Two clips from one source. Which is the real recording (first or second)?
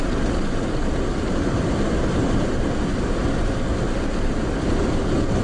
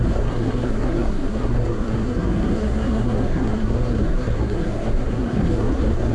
first